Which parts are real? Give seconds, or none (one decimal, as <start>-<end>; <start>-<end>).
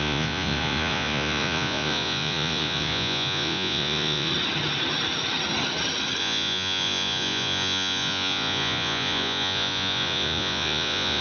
4.3-6.2